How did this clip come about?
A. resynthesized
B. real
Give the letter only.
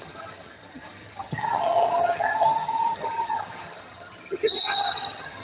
A